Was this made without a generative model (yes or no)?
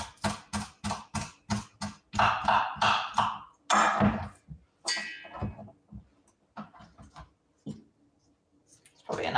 yes